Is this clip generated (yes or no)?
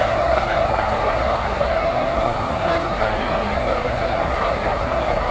yes